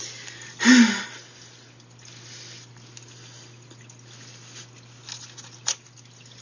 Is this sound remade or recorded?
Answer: recorded